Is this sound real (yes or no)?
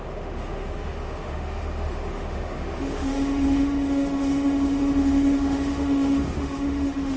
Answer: no